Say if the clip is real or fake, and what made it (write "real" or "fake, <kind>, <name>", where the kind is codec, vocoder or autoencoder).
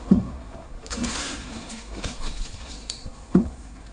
fake, codec, SNAC